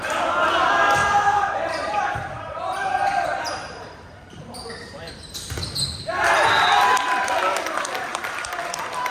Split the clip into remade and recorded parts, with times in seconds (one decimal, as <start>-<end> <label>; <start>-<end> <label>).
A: 0.0-1.0 recorded; 1.0-5.6 remade; 5.6-8.1 recorded; 8.1-8.6 remade; 8.6-9.1 recorded